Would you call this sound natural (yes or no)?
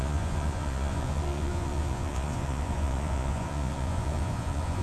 no